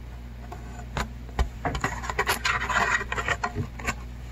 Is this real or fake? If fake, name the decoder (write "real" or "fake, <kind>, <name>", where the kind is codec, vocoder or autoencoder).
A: real